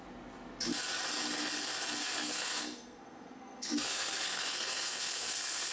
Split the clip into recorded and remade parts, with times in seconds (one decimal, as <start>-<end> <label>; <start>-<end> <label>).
0.0-2.0 recorded; 2.0-5.7 remade